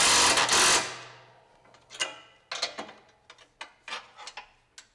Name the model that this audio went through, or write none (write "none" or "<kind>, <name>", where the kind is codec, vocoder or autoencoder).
none